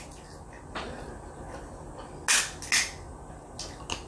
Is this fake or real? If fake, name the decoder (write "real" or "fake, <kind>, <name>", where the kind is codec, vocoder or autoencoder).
real